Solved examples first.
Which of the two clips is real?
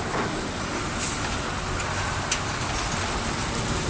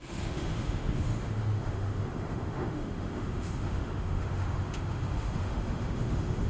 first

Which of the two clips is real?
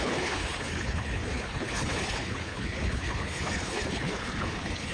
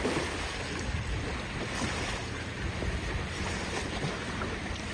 second